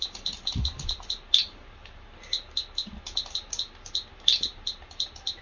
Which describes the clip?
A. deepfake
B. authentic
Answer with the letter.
B